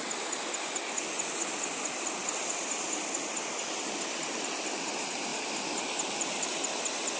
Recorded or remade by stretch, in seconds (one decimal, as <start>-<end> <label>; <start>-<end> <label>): 0.0-7.2 recorded